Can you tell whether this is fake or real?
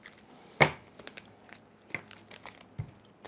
real